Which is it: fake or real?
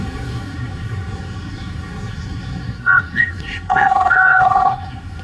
fake